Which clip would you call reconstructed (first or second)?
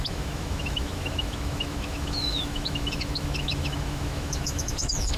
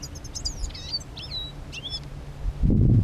first